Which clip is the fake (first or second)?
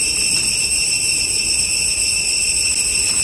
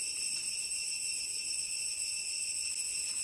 first